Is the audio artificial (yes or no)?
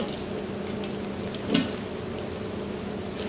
no